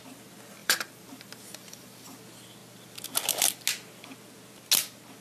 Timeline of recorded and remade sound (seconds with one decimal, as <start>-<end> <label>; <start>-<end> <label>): 0.0-0.6 recorded; 0.6-2.2 remade; 2.2-5.2 recorded